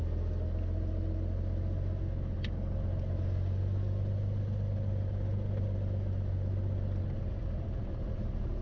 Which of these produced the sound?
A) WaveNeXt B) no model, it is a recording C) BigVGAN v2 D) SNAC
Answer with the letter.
B